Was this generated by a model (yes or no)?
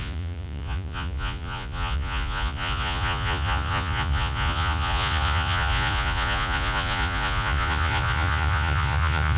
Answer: yes